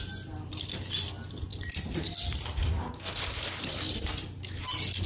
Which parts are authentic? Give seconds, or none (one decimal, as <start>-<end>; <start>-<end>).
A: 0.0-5.1